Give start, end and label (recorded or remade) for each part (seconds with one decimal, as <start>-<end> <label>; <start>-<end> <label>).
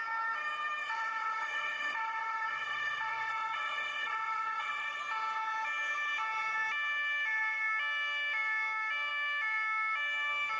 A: 0.0-0.8 recorded; 0.8-5.0 remade; 5.0-10.6 recorded